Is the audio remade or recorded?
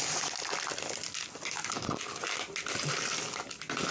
recorded